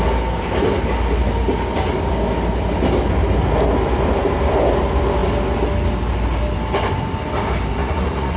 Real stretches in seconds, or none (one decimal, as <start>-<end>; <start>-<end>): 0.0-7.8